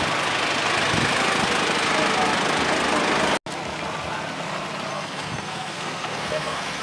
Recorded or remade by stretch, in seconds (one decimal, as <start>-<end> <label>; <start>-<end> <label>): 0.0-4.9 recorded; 4.9-6.8 remade